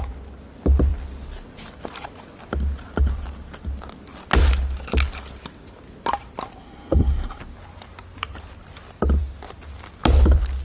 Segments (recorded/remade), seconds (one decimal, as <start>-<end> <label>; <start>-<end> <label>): 0.0-6.6 recorded; 6.6-7.4 remade; 7.4-10.6 recorded